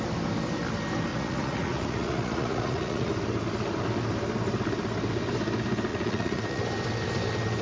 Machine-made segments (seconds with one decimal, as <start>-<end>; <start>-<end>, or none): 1.1-3.1; 5.9-6.6